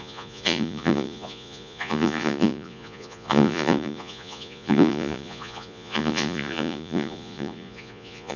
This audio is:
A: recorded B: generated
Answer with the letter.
B